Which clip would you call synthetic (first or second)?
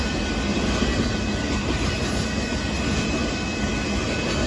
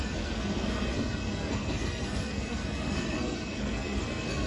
second